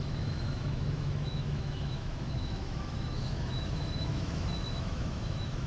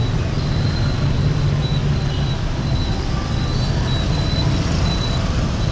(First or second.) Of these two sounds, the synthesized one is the first